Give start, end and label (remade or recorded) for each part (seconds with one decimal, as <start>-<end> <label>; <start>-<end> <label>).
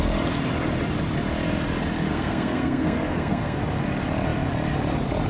0.0-2.1 recorded; 2.1-3.6 remade; 3.6-5.3 recorded